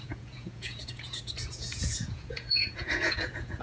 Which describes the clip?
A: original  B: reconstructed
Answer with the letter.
B